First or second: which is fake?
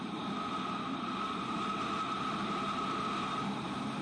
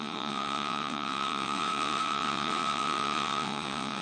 second